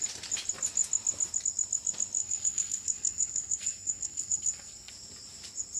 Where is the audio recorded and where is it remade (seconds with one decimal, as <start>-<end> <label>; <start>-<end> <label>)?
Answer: 0.0-2.2 recorded; 2.2-4.9 remade; 4.9-5.8 recorded